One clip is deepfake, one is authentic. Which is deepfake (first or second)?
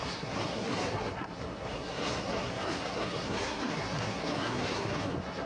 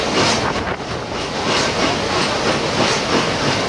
first